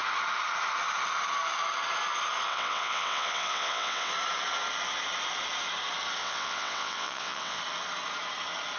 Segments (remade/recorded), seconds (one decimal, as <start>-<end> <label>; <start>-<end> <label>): 0.0-2.5 recorded; 2.5-4.1 remade; 4.1-6.2 recorded; 6.2-7.6 remade; 7.6-8.8 recorded